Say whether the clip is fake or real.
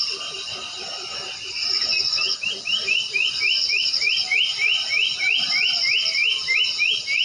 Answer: real